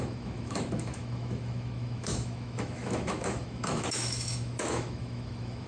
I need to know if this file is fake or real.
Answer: fake